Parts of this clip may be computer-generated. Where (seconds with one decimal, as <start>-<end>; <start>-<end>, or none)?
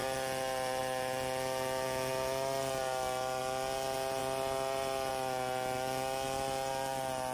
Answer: none